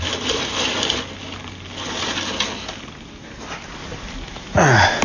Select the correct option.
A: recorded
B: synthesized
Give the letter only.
A